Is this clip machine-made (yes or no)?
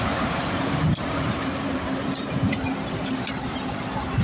yes